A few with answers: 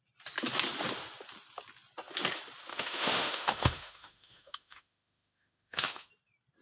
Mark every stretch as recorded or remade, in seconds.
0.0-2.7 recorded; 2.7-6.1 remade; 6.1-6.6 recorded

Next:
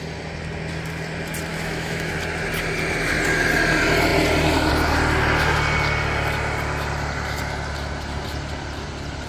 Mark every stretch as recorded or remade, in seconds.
0.0-1.5 recorded; 1.5-2.1 remade; 2.1-9.3 recorded

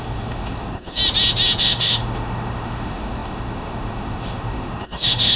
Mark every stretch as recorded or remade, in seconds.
0.0-1.0 remade; 1.0-1.6 recorded; 1.6-5.4 remade

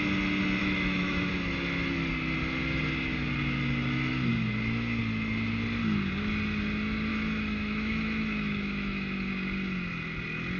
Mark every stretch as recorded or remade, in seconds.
0.0-0.6 recorded; 0.6-1.3 remade; 1.3-7.1 recorded; 7.1-9.3 remade; 9.3-10.6 recorded

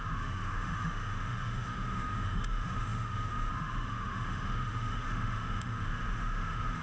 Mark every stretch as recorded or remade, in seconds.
0.0-6.8 remade

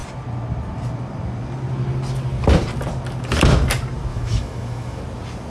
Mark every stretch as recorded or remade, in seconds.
0.0-4.1 recorded; 4.1-5.0 remade; 5.0-5.5 recorded